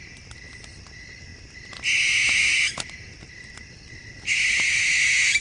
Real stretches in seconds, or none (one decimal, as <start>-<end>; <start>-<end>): 0.0-5.4